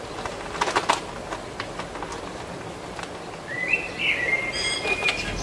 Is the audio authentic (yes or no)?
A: yes